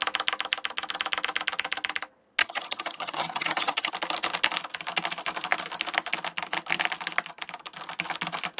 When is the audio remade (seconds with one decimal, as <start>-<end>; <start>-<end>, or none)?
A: 2.4-3.9